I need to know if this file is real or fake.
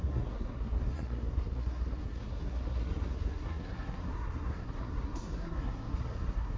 fake